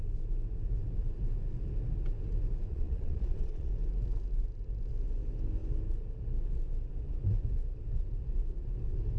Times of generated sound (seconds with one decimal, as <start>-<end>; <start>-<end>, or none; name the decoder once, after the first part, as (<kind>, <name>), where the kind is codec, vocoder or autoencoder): 2.7-3.7 (vocoder, Vocos)